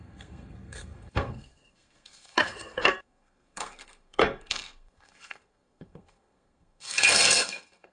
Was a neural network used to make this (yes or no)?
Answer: yes